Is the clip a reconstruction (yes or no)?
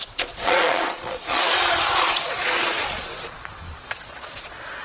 yes